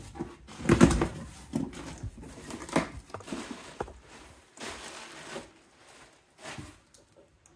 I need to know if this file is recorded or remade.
recorded